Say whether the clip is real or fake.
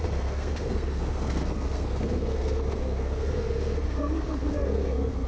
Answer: fake